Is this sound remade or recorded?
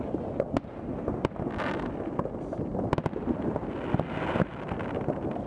recorded